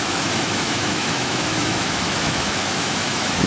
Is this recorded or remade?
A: remade